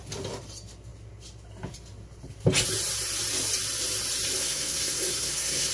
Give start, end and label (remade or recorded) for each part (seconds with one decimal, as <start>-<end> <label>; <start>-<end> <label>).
0.0-4.4 recorded; 4.4-5.7 remade